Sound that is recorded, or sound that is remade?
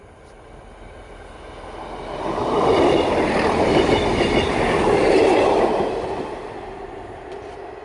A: recorded